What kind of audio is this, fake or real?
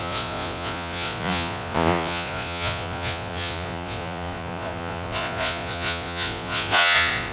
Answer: fake